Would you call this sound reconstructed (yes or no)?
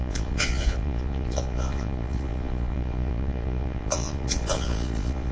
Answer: yes